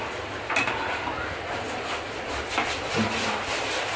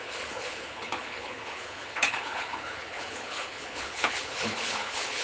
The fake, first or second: second